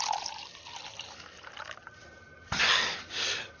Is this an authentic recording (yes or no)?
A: yes